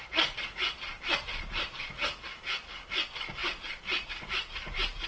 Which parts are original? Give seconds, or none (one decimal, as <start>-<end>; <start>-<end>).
0.0-1.3; 1.9-3.4; 4.1-5.1